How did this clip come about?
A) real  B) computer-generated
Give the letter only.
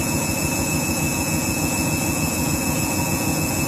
B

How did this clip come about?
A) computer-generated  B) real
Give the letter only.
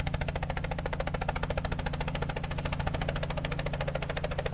B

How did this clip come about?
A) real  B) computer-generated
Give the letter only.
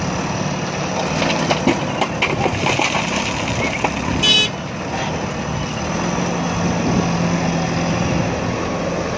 A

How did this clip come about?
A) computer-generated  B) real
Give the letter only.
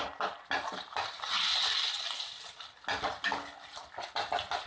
B